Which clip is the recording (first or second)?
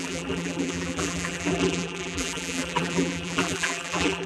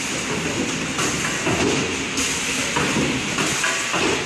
second